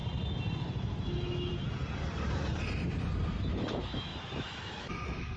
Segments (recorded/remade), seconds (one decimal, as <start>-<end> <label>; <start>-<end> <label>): 0.0-0.6 recorded; 0.6-1.5 remade; 1.5-3.4 recorded; 3.4-5.4 remade